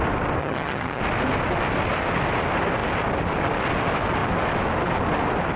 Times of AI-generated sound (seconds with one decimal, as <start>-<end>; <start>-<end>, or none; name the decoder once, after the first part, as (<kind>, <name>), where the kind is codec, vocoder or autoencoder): 0.4-1.0 (vocoder, HiFi-GAN)